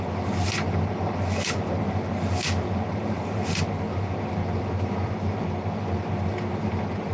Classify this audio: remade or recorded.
recorded